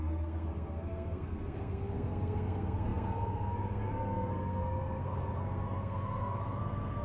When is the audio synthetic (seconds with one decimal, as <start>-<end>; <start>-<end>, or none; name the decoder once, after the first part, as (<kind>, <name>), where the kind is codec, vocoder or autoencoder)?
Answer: 0.0-7.0 (codec, SNAC)